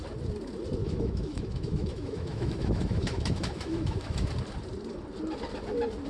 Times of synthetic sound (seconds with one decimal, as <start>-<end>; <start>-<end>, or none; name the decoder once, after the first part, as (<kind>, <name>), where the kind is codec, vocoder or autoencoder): 0.8-4.3 (autoencoder, DAC-VAE)